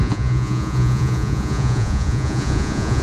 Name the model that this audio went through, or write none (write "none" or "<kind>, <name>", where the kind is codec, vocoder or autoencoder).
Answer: vocoder, Vocos